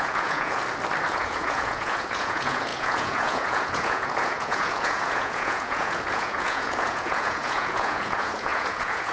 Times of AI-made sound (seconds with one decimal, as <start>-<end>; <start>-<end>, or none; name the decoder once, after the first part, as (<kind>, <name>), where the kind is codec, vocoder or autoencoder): 0.0-0.6 (vocoder, Vocos); 1.1-9.1